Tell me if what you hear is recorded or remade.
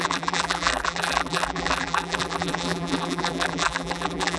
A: remade